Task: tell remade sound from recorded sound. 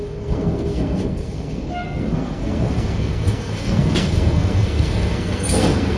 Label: remade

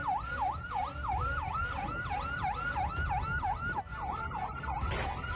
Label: recorded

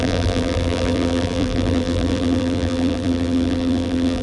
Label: remade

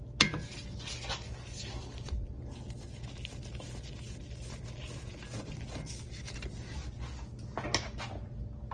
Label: recorded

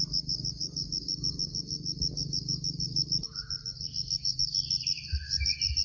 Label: recorded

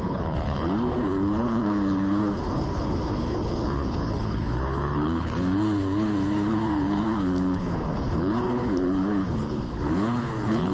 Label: remade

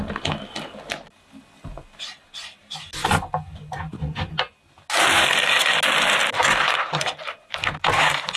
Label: recorded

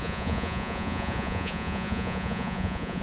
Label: remade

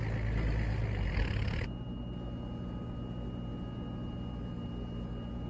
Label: recorded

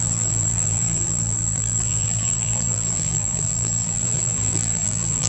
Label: remade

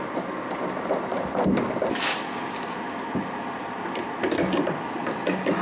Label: recorded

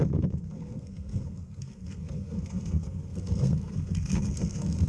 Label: remade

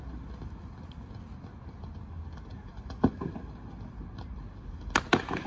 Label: recorded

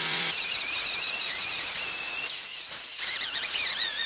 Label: remade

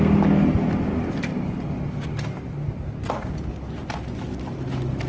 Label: recorded